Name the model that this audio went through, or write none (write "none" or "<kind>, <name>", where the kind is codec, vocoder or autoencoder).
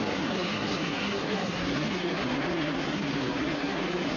codec, SNAC